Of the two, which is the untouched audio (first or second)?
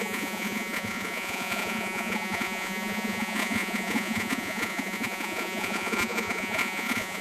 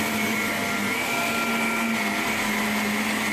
second